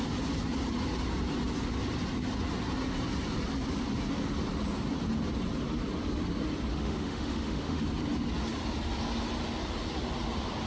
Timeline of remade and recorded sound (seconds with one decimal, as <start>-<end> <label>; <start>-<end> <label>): 0.0-6.7 recorded; 6.7-7.8 remade; 7.8-10.7 recorded